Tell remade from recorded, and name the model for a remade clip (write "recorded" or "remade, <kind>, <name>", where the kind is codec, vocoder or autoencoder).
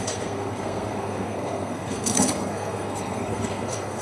remade, codec, SNAC